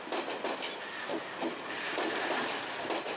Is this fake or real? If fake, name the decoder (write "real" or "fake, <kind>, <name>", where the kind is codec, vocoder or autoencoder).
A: real